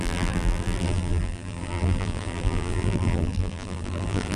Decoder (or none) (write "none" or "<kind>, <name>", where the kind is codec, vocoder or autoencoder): vocoder, BigVGAN v2